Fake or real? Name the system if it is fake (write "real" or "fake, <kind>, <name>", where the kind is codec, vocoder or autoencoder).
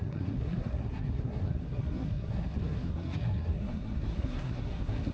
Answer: fake, codec, SNAC